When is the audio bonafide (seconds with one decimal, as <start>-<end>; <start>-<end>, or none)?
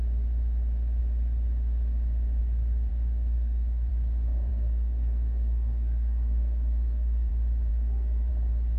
0.0-2.9; 3.9-4.5; 7.3-7.7; 8.3-8.8